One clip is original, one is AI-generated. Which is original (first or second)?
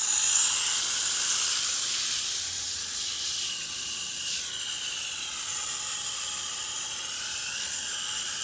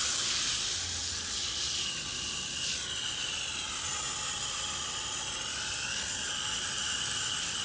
second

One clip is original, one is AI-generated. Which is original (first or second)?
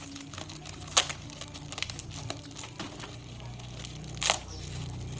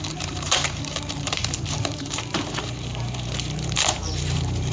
first